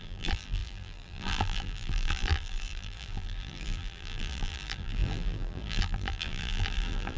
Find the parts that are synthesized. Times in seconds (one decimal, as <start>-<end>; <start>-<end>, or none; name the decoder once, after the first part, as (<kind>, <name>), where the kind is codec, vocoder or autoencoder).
0.0-7.2 (vocoder, BigVGAN v2)